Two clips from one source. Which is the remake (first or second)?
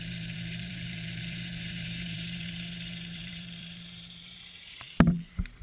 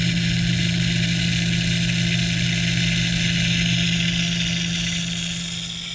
first